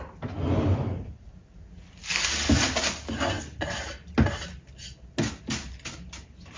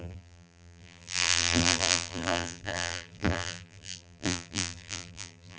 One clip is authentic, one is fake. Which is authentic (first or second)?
first